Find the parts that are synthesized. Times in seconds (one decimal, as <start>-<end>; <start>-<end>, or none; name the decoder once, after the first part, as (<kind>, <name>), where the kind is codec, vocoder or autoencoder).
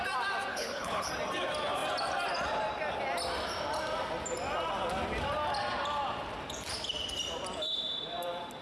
0.5-1.1 (codec, HILCodec)